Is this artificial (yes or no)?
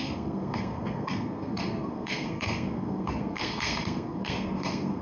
yes